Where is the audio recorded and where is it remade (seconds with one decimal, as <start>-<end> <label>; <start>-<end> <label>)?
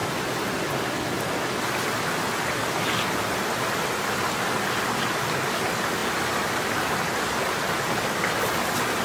0.0-9.0 recorded